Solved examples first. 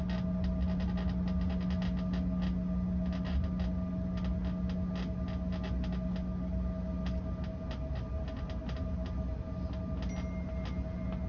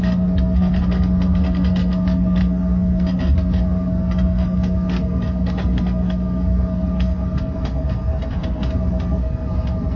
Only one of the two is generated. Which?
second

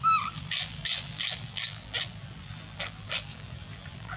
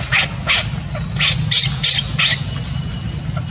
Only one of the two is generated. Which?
first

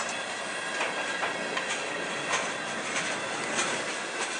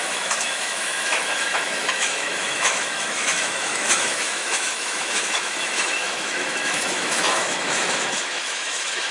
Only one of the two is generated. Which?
second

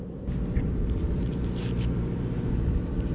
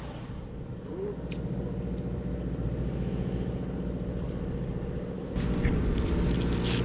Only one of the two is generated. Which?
first